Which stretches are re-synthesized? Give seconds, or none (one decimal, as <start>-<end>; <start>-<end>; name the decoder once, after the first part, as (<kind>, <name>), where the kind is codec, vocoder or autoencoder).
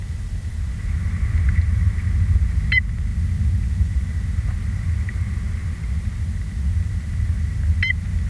0.0-0.7 (vocoder, BigVGAN v2)